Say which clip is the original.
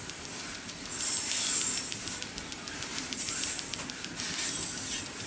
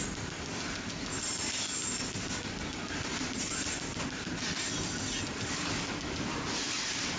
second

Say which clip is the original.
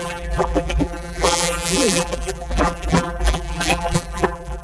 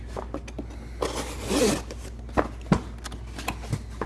second